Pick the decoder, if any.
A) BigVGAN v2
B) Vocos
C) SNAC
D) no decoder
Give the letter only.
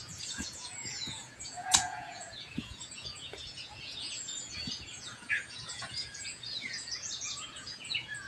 B